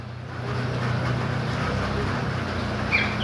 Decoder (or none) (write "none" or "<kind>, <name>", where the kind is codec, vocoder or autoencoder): none